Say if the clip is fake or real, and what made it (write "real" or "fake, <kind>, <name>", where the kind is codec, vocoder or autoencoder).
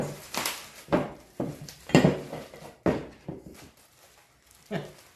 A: real